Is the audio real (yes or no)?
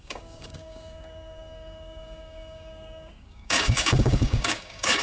no